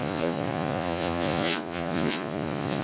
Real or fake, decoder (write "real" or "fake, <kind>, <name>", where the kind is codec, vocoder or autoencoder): fake, vocoder, Vocos